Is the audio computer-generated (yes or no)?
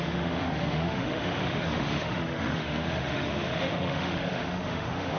yes